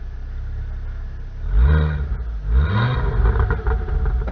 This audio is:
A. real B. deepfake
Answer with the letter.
A